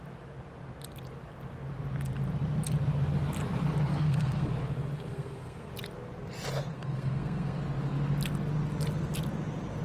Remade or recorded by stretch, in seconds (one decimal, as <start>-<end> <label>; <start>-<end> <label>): 0.0-3.9 recorded; 3.9-4.5 remade; 4.5-5.1 recorded; 5.1-5.7 remade; 5.7-6.7 recorded; 6.7-7.6 remade; 7.6-9.8 recorded